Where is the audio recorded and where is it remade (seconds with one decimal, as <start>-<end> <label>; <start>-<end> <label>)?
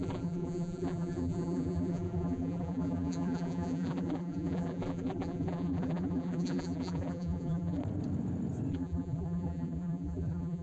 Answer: 0.0-7.8 remade; 7.8-8.7 recorded; 8.7-10.6 remade